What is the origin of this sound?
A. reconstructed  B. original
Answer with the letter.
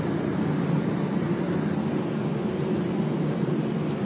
B